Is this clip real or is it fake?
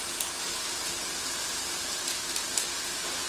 real